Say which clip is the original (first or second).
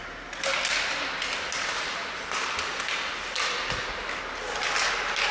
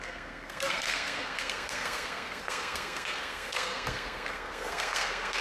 first